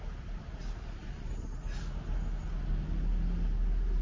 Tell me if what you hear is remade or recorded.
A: recorded